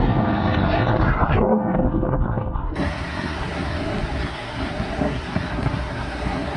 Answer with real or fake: fake